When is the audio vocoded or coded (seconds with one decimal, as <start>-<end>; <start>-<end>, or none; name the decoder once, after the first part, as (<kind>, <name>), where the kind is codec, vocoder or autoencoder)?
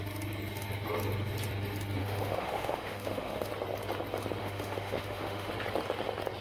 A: 2.0-3.5 (autoencoder, DAC-VAE); 4.4-5.5